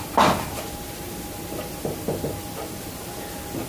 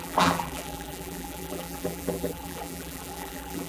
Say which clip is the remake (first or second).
second